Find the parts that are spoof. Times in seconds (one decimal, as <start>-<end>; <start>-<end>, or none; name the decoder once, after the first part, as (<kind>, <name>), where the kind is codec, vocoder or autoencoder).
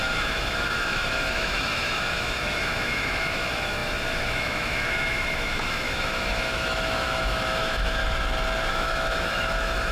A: 0.0-8.0 (autoencoder, DAC-VAE); 8.7-9.9